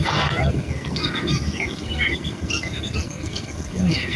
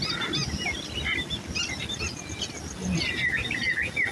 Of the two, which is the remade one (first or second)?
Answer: first